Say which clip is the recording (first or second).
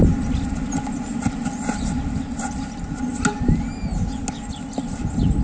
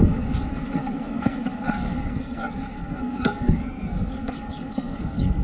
first